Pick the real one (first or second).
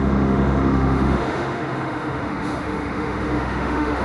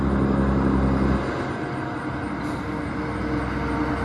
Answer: second